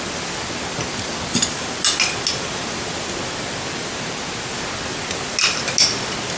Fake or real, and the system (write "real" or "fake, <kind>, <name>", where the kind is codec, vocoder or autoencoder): real